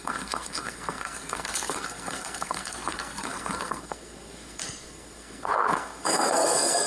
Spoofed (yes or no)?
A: yes